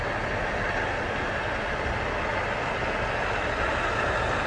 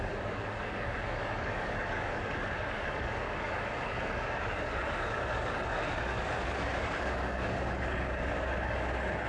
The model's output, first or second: second